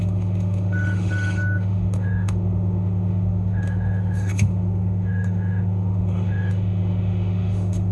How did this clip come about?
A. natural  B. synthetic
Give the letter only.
B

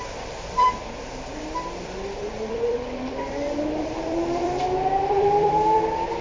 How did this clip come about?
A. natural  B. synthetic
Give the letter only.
B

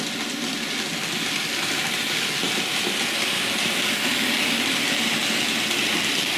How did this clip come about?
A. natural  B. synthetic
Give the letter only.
A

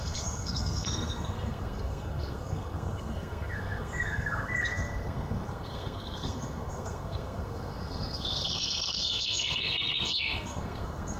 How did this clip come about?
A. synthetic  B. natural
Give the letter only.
A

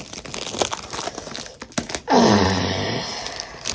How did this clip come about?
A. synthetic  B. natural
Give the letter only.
B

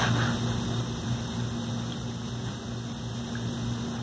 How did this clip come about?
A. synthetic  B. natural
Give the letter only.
B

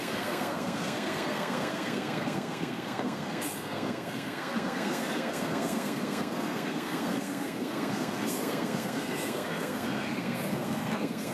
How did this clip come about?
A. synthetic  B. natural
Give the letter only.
A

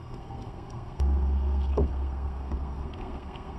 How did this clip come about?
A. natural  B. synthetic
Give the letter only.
B